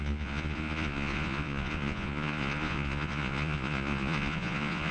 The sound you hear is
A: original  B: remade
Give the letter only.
B